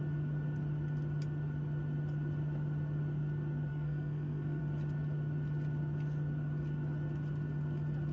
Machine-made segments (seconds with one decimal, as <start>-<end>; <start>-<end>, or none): 3.7-4.6